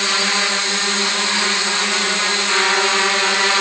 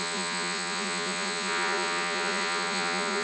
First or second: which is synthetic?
second